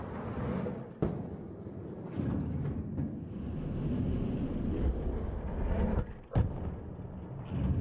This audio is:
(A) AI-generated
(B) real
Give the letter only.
B